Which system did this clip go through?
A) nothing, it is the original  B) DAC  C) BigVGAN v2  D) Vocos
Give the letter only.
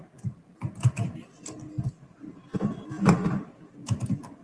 A